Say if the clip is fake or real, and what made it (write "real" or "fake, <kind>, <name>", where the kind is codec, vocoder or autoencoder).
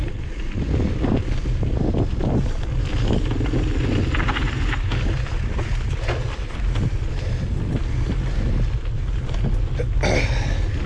real